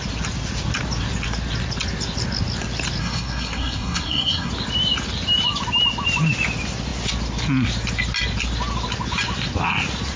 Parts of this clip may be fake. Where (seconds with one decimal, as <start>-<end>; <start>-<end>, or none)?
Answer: 3.0-4.5